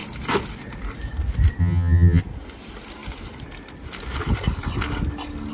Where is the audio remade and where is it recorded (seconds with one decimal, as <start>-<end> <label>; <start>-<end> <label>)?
0.0-1.6 recorded; 1.6-2.2 remade; 2.2-5.5 recorded